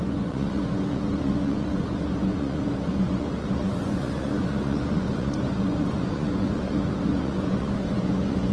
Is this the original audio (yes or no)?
no